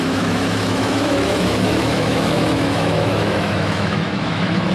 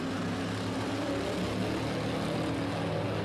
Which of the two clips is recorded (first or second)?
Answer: second